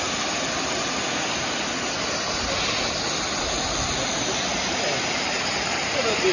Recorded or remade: recorded